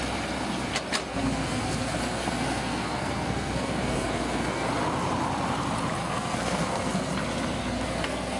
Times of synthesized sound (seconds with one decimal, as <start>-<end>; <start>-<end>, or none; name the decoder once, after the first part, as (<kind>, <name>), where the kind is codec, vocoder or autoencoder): 1.1-4.7 (codec, SNAC); 6.0-7.1; 7.6-8.4